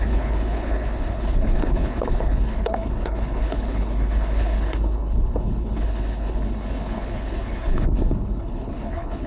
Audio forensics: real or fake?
fake